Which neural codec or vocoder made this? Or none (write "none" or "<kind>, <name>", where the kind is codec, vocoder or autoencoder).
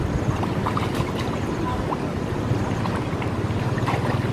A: none